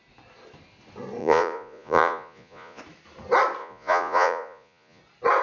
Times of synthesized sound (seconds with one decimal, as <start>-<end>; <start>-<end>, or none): 1.2-2.8; 3.6-5.0